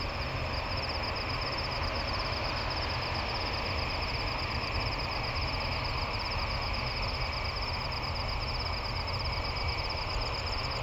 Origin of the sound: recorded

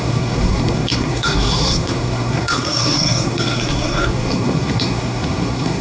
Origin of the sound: remade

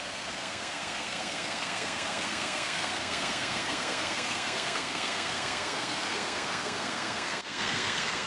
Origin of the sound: remade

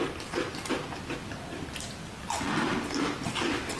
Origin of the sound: recorded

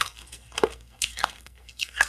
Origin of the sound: remade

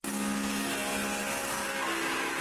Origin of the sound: recorded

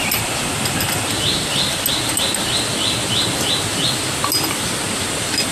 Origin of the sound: recorded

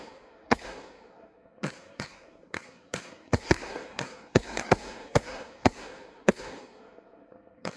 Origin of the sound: remade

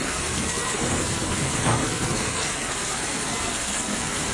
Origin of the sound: remade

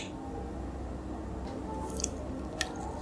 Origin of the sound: recorded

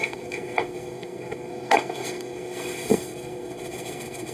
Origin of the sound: remade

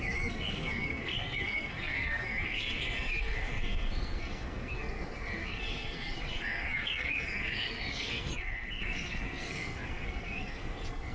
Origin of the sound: remade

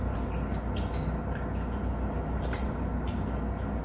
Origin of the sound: recorded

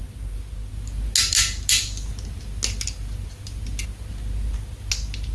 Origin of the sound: recorded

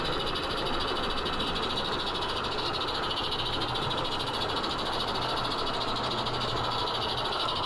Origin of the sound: recorded